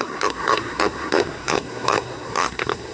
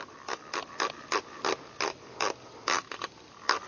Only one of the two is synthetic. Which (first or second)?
first